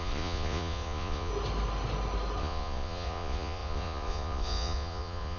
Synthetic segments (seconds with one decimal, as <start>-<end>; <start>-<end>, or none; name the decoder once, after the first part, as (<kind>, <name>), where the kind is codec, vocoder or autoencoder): 0.0-1.3 (vocoder, Vocos); 2.4-5.4